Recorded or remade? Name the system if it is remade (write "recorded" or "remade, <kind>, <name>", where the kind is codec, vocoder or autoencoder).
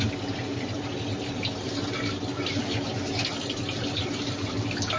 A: recorded